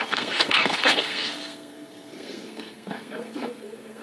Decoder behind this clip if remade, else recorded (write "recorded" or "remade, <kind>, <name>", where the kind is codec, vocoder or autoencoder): remade, codec, SNAC